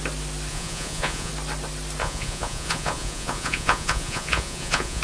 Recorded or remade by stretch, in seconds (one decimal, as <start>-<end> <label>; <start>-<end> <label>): 0.0-0.5 recorded; 0.5-1.3 remade; 1.3-2.0 recorded; 2.0-5.0 remade